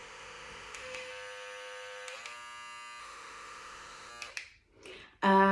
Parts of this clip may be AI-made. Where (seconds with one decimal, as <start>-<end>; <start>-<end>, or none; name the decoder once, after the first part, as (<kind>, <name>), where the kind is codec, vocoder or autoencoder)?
0.0-1.1 (autoencoder, DAC-VAE); 3.0-4.1